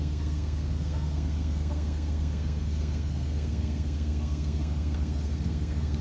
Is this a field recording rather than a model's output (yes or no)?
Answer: no